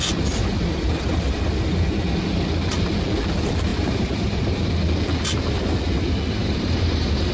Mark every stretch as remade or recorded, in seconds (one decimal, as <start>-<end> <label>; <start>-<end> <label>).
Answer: 0.0-0.4 recorded; 0.4-1.4 remade; 1.4-3.7 recorded; 3.7-4.7 remade; 4.7-6.4 recorded; 6.4-7.3 remade